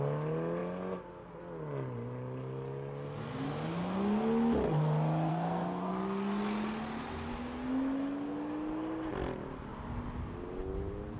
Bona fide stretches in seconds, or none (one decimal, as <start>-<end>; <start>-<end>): 0.0-5.3; 5.9-11.2

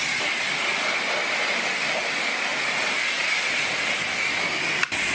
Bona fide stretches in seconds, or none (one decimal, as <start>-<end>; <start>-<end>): 0.0-5.1